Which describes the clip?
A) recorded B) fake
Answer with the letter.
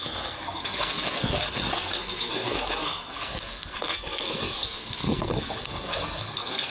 B